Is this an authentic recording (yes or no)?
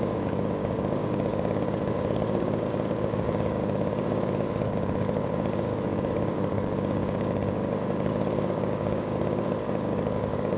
no